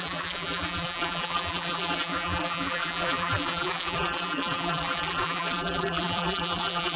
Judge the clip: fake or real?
fake